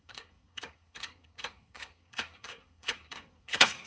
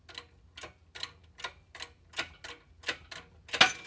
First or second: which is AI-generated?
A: first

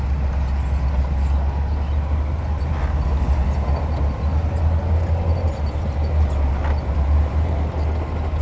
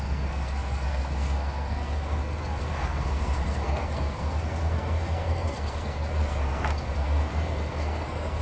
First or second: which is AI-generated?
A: second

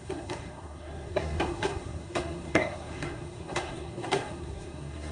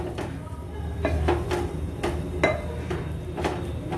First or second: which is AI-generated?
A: first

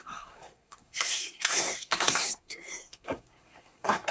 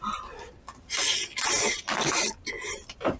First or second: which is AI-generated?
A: first